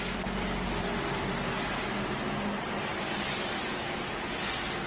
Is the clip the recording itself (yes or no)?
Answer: yes